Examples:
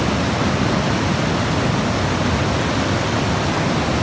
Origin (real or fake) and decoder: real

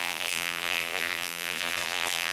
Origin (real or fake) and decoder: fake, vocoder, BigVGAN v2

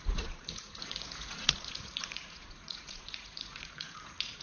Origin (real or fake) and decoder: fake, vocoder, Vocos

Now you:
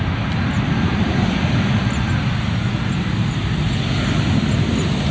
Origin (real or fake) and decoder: real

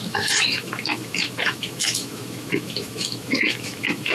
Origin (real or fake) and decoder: fake, autoencoder, DAC-VAE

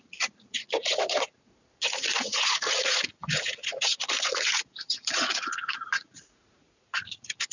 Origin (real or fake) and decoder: fake, vocoder, Vocos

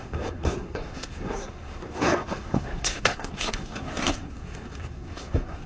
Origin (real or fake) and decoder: fake, codec, SNAC